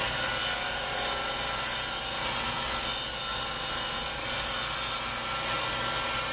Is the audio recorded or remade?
recorded